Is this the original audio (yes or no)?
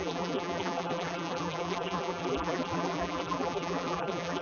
no